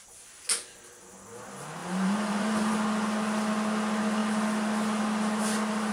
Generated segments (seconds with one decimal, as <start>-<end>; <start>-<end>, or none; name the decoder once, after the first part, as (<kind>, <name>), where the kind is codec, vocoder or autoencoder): 1.8-2.7 (vocoder, BigVGAN v2)